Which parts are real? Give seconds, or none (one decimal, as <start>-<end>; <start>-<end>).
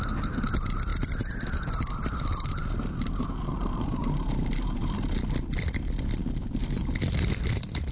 0.0-7.9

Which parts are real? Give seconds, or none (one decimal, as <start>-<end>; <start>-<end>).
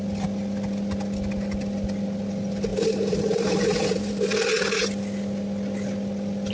0.0-2.7; 4.1-6.5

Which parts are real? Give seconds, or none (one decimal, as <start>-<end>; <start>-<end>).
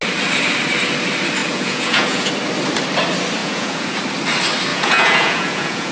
0.0-1.4; 2.3-3.4; 4.0-4.7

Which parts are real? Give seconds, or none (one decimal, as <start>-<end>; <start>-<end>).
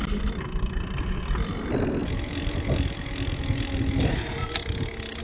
0.0-5.2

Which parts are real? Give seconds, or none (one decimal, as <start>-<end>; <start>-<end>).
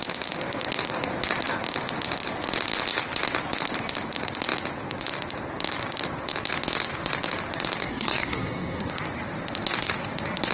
0.0-7.8; 8.9-10.5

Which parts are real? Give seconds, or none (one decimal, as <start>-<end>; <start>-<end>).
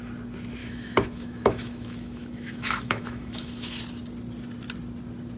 0.0-0.6; 3.8-5.4